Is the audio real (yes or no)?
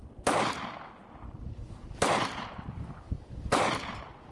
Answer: yes